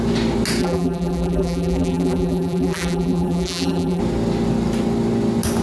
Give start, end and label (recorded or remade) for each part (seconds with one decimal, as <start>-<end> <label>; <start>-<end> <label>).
0.0-0.6 recorded; 0.6-4.0 remade; 4.0-5.6 recorded